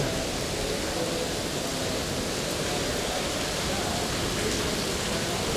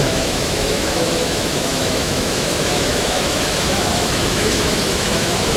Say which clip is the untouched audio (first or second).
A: first